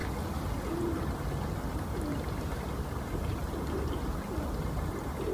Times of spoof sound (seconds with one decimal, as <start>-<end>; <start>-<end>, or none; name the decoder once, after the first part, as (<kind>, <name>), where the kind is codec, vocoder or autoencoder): 1.7-3.4 (vocoder, BigVGAN v2); 4.6-5.3